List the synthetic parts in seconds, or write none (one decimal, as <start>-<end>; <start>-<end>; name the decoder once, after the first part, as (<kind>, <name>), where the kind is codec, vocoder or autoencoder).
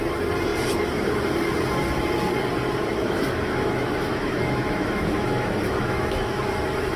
3.0-6.3 (autoencoder, DAC-VAE)